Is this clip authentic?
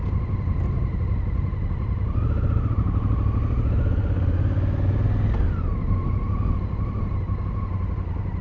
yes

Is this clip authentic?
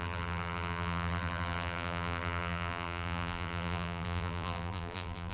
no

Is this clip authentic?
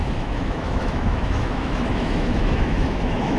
no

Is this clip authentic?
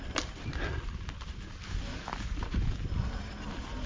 yes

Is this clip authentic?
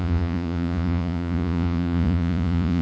no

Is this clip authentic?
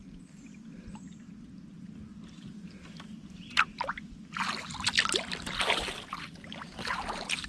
yes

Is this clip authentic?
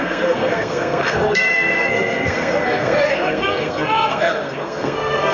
no